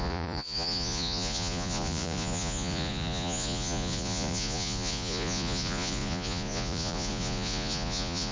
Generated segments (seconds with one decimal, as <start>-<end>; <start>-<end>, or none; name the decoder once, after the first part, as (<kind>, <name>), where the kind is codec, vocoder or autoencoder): 0.0-8.3 (vocoder, Vocos)